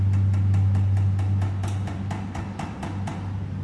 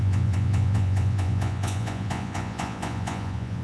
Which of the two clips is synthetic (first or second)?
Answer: second